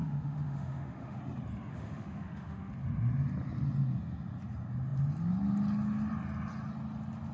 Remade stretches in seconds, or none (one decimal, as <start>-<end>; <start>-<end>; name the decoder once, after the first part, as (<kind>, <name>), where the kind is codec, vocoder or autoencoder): 0.0-1.2 (autoencoder, DAC-VAE); 1.7-2.7